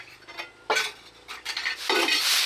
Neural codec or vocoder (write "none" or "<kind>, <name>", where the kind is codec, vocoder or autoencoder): none